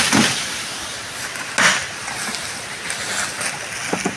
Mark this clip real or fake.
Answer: real